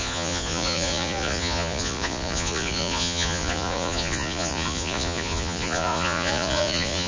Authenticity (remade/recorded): remade